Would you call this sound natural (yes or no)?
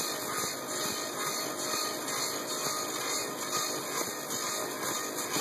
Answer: yes